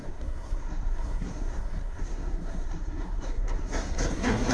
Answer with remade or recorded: remade